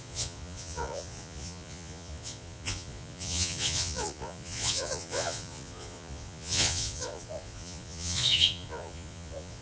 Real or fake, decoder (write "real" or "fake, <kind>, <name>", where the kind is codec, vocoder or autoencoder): fake, vocoder, Vocos